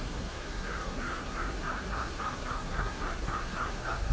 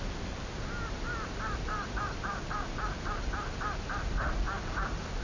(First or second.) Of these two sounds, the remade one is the first